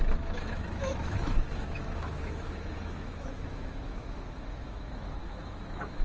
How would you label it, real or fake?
fake